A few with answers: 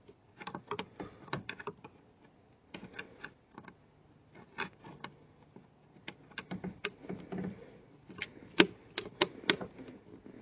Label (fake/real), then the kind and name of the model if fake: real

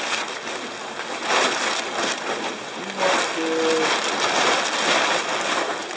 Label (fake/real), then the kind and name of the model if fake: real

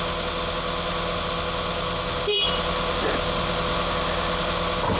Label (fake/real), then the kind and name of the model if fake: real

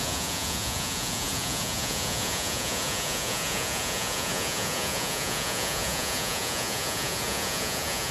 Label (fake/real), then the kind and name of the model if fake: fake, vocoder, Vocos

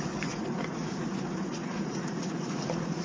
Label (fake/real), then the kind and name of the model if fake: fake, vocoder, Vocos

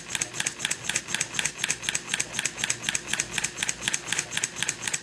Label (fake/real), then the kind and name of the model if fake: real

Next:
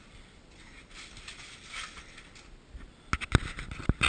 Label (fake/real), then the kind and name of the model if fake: real